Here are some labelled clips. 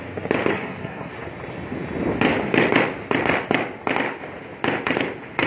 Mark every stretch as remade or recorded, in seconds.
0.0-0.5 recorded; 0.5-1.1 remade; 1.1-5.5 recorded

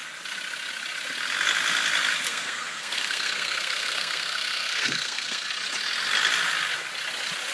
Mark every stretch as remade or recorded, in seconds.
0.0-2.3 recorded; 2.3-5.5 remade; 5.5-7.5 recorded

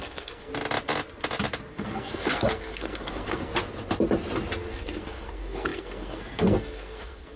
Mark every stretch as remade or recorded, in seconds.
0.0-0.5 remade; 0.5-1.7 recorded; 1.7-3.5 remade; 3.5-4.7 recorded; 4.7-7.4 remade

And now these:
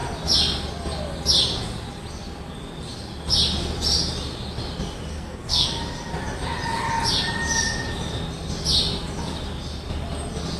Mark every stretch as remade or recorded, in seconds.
0.0-5.1 recorded; 5.1-5.8 remade; 5.8-10.6 recorded